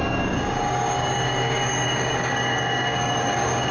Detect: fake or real fake